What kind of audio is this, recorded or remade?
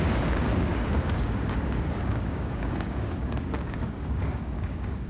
remade